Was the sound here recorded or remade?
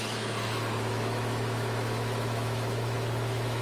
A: remade